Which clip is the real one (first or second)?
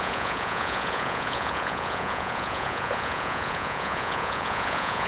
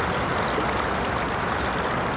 second